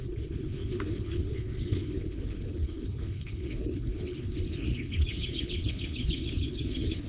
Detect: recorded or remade remade